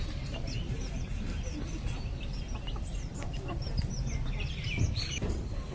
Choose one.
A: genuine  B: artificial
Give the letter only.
B